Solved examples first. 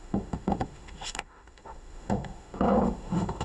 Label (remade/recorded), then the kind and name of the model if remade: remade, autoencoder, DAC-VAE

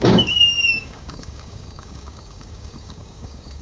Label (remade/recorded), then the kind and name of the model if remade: remade, codec, DAC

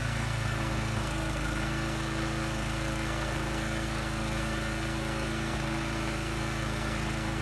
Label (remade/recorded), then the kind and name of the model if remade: remade, codec, SNAC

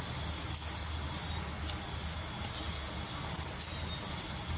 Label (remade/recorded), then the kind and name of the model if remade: recorded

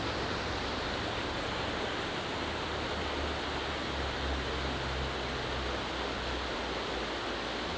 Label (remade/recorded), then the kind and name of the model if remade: recorded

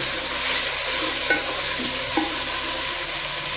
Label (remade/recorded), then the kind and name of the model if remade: recorded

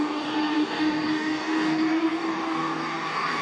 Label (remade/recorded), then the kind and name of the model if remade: remade, codec, DAC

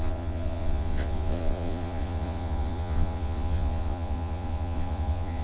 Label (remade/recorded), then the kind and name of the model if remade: remade, vocoder, Vocos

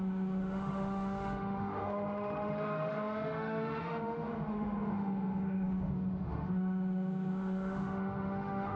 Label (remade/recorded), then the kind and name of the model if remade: remade, autoencoder, DAC-VAE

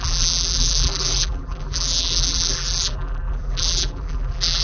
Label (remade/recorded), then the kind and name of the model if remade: remade, vocoder, BigVGAN v2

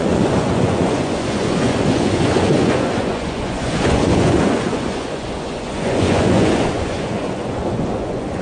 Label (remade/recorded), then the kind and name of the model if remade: remade, vocoder, Vocos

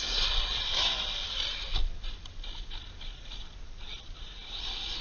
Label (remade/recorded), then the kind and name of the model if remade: recorded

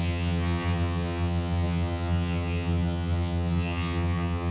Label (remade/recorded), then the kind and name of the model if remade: remade, vocoder, HiFi-GAN